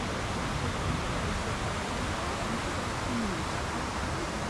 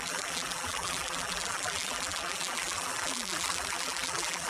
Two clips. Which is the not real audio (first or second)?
second